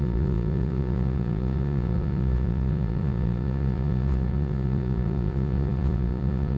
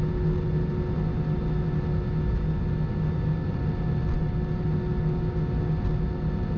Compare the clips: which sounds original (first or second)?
second